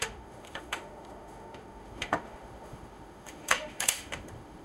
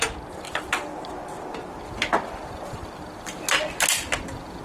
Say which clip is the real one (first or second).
second